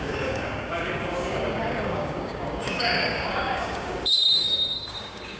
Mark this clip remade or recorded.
remade